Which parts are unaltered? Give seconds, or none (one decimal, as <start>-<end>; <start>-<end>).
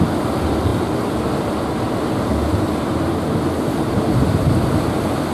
0.0-5.3